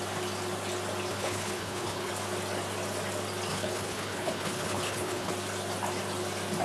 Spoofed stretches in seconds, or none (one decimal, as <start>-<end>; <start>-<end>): 1.1-2.1; 3.5-5.3